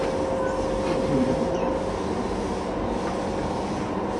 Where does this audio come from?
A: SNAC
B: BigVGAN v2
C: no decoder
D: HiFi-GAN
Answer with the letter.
C